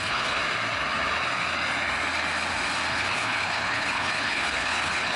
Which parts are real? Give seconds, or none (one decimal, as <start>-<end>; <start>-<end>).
0.4-2.9